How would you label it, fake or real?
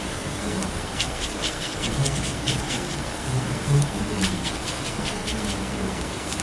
fake